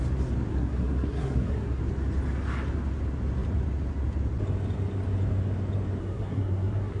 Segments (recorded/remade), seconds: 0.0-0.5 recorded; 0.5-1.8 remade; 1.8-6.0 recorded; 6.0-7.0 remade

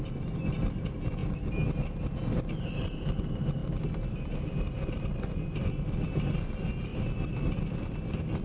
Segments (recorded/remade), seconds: 0.0-8.4 recorded

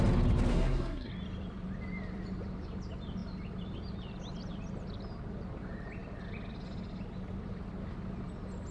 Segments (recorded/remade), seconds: 0.0-0.5 recorded; 0.5-1.1 remade; 1.1-8.7 recorded

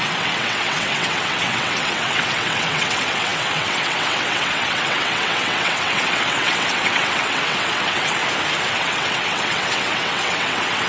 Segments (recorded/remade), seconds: 0.0-8.2 remade; 8.2-8.7 recorded; 8.7-10.9 remade